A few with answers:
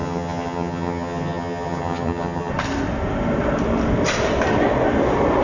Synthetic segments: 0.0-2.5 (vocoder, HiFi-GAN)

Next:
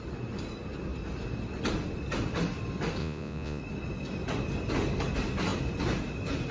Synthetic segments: 3.0-3.6 (vocoder, Vocos)